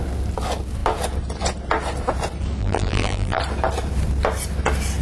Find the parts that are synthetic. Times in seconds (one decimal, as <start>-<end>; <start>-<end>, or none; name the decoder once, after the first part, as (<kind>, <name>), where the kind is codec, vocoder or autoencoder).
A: 2.6-3.4 (vocoder, BigVGAN v2)